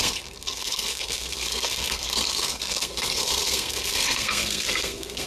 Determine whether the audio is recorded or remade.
remade